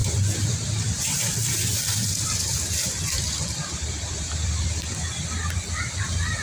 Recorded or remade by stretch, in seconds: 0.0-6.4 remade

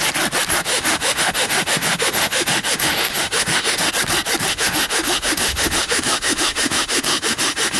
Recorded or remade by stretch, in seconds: 0.0-0.7 recorded; 0.7-3.9 remade; 3.9-4.5 recorded; 4.5-7.8 remade

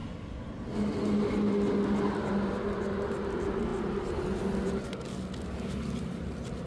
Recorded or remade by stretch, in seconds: 0.0-6.7 recorded